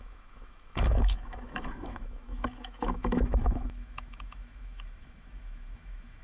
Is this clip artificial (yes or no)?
yes